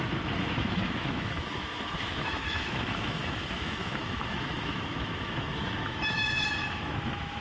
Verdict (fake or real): fake